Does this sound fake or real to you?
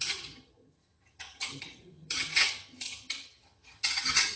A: fake